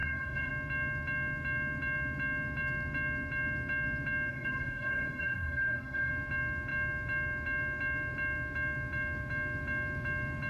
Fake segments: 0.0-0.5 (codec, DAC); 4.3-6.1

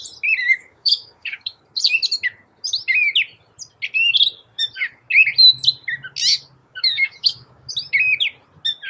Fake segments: 0.4-1.6 (codec, DAC); 6.6-7.7

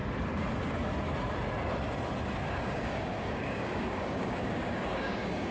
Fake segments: 2.5-5.5 (codec, DAC)